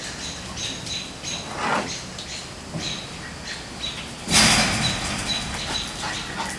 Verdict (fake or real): real